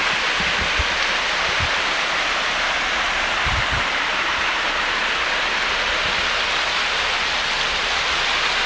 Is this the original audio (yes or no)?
yes